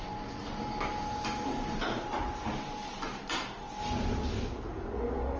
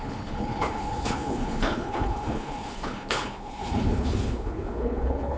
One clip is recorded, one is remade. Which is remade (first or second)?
second